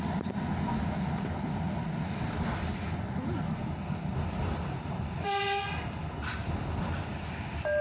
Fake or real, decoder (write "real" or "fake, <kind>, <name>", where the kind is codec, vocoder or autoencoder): real